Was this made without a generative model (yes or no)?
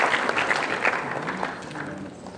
yes